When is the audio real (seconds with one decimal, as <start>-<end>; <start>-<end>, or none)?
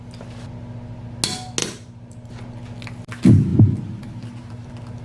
0.0-1.6; 2.3-5.0